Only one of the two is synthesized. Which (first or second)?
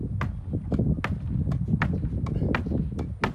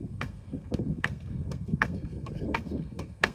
second